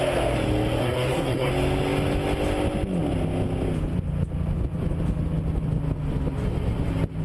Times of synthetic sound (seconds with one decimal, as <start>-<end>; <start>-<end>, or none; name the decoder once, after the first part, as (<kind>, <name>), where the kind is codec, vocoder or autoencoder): 0.8-1.5 (codec, SNAC)